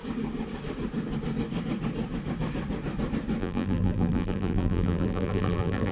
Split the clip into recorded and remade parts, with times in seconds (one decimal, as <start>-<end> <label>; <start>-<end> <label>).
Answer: 0.0-3.4 recorded; 3.4-5.9 remade